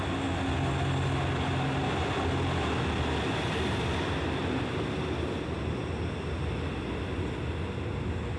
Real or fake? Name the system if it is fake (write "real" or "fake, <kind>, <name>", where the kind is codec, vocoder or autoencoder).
real